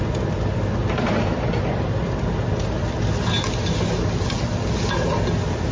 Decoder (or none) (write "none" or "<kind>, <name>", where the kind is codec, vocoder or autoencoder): none